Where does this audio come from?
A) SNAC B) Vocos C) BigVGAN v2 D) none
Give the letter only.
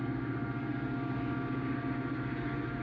D